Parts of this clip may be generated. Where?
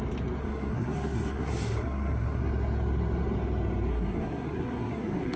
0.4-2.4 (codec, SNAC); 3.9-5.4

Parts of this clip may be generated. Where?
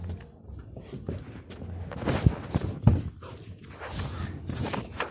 none